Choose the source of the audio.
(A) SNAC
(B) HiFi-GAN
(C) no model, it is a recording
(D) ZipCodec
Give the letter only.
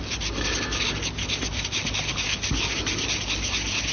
C